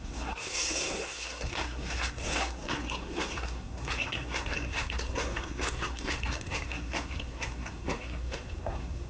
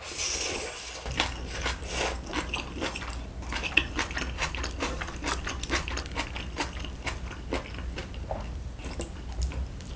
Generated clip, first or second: first